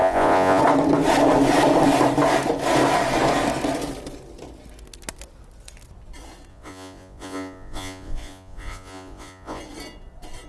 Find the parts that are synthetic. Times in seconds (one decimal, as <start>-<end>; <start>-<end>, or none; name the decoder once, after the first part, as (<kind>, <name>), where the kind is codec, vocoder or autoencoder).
0.0-0.6 (vocoder, Vocos); 6.5-9.6